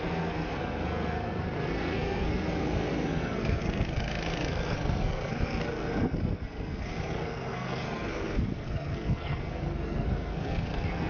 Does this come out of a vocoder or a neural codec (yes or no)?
yes